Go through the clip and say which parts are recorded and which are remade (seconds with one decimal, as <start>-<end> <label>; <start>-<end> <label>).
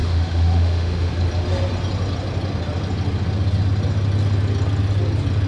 0.0-1.1 remade; 1.1-5.5 recorded